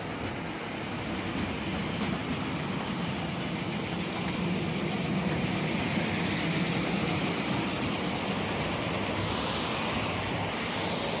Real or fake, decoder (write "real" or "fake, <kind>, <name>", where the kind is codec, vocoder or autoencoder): real